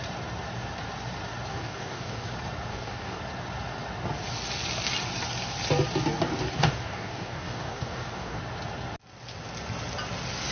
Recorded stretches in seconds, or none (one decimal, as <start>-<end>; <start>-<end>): 0.0-1.5; 2.3-2.7; 3.2-6.6; 8.4-10.5